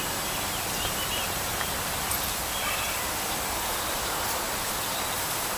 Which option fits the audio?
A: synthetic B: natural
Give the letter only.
B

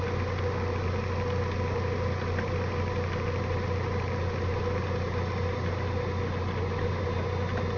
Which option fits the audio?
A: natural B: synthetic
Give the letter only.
A